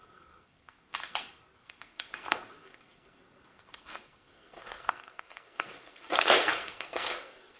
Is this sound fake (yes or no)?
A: yes